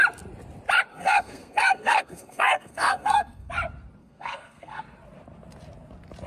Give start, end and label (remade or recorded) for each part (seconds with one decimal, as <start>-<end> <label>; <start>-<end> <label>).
0.0-0.9 recorded; 0.9-3.5 remade; 3.5-4.0 recorded; 4.0-4.8 remade; 4.8-6.3 recorded